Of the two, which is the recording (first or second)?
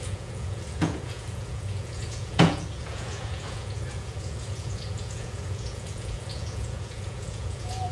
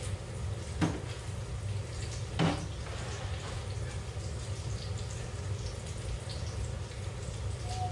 second